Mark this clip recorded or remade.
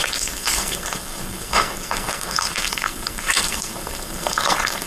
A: remade